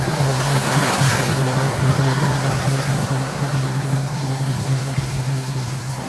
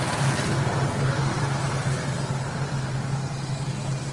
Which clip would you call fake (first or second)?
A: first